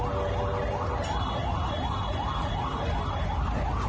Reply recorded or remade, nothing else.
recorded